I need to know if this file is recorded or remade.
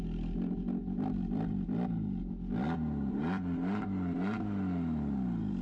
recorded